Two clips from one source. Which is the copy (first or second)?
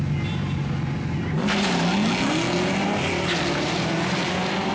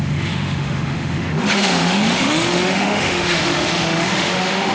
second